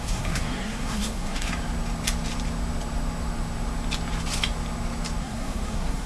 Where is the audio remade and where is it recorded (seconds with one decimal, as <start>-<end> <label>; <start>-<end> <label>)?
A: 0.0-1.5 remade; 1.5-5.2 recorded; 5.2-6.1 remade